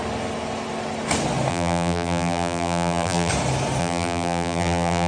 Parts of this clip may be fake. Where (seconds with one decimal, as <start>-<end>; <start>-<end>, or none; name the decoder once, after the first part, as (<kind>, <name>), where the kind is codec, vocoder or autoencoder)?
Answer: 1.5-3.3 (vocoder, BigVGAN v2); 3.8-5.1